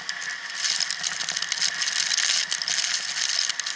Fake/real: real